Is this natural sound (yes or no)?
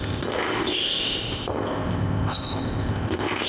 no